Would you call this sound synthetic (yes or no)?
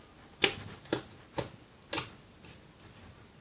no